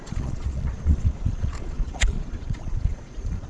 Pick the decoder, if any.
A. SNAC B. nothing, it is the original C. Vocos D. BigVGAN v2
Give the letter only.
C